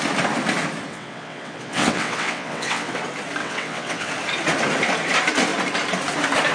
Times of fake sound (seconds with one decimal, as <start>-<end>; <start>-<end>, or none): 0.9-3.0; 3.4-4.1